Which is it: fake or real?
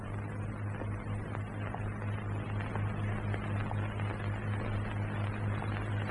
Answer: real